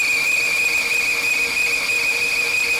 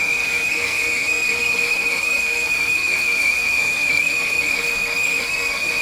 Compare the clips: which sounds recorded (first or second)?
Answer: first